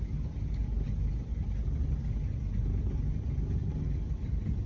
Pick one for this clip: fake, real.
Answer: real